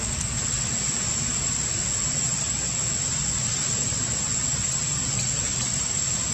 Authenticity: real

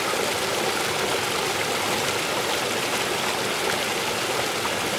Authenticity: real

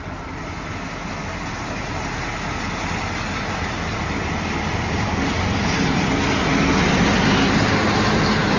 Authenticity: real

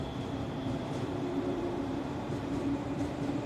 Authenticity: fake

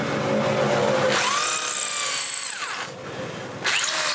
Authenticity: real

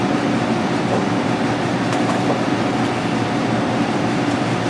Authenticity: fake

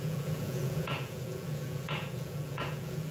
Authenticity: fake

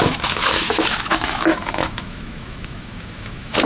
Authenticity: fake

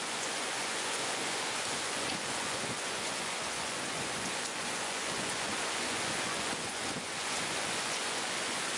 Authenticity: fake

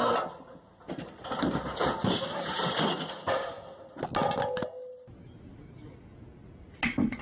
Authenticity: real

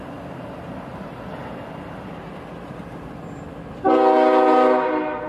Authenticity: real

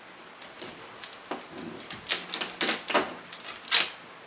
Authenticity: real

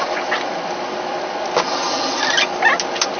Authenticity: real